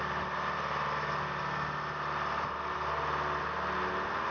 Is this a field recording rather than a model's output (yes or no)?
yes